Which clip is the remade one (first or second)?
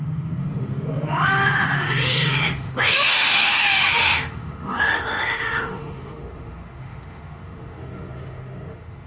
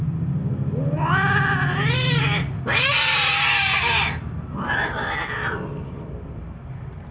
first